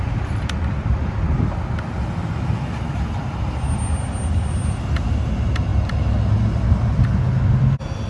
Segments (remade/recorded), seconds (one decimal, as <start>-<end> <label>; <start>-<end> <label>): 0.0-8.1 recorded

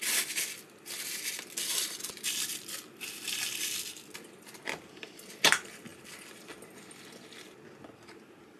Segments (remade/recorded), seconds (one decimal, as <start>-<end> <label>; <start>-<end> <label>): 0.0-8.6 recorded